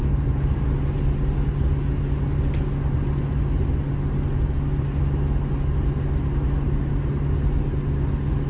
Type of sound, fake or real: real